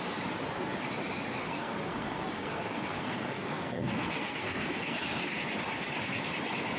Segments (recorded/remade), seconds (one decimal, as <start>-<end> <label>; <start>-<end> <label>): 0.0-1.4 recorded; 1.4-5.5 remade; 5.5-6.8 recorded